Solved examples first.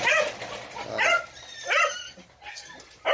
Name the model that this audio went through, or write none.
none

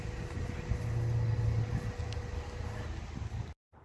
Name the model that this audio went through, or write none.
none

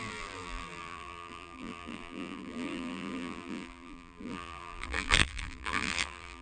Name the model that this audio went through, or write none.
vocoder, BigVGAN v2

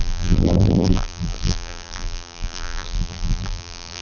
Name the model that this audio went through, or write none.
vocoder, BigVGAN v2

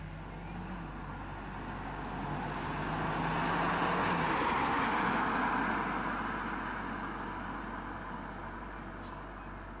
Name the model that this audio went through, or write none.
none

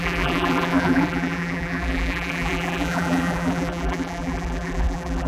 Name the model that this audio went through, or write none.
vocoder, BigVGAN v2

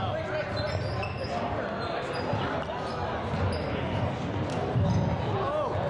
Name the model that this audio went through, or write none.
none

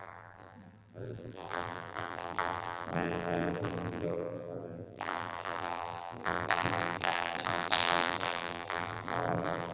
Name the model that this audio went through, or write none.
vocoder, BigVGAN v2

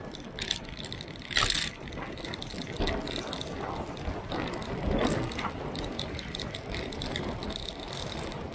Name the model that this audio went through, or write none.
vocoder, BigVGAN v2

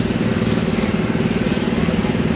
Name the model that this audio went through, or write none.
none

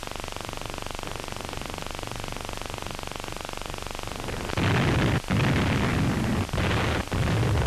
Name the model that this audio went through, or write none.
none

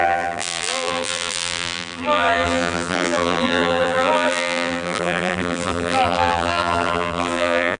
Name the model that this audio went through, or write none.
vocoder, BigVGAN v2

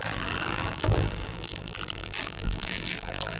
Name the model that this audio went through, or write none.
vocoder, BigVGAN v2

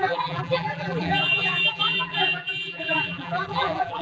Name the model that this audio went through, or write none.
vocoder, BigVGAN v2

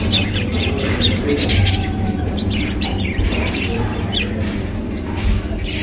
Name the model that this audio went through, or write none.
vocoder, BigVGAN v2